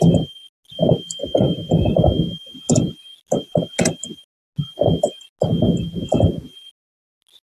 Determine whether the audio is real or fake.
real